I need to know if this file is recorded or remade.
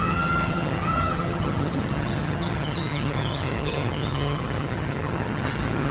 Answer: remade